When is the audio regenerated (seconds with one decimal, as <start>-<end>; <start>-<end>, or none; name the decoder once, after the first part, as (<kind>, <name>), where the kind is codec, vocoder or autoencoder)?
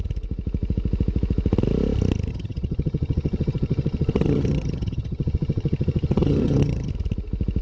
2.3-6.9 (vocoder, HiFi-GAN)